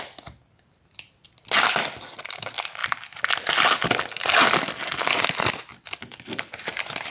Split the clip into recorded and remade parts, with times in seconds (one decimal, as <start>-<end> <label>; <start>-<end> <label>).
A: 0.0-7.1 recorded

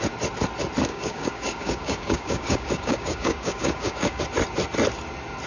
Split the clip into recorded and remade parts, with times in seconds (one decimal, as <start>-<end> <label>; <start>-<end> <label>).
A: 0.0-0.9 recorded; 0.9-4.2 remade; 4.2-5.5 recorded

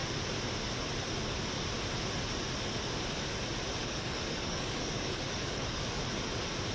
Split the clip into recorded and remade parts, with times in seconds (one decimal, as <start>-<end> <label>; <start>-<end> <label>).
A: 0.0-3.8 recorded; 3.8-6.0 remade; 6.0-6.7 recorded

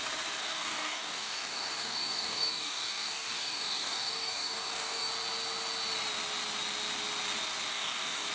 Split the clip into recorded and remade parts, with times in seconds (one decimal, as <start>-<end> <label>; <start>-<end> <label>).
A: 0.0-0.4 recorded; 0.4-5.1 remade; 5.1-7.7 recorded; 7.7-8.3 remade